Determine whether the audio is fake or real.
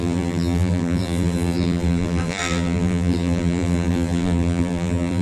fake